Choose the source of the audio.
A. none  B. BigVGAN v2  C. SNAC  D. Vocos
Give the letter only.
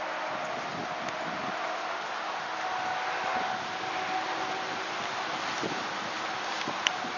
A